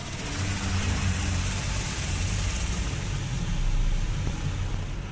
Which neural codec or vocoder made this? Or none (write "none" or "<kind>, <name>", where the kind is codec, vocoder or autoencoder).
none